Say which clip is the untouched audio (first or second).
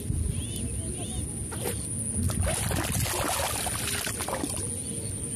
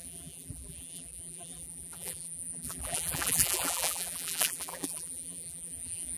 first